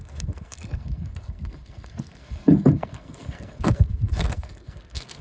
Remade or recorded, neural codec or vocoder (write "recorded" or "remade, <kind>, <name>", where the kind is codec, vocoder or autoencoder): remade, codec, SNAC